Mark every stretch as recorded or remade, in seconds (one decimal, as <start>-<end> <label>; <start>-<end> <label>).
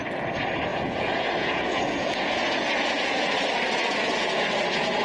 0.0-0.7 recorded; 0.7-3.3 remade; 3.3-3.8 recorded; 3.8-5.0 remade